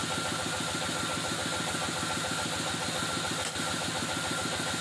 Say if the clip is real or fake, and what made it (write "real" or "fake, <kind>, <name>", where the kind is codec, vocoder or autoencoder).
real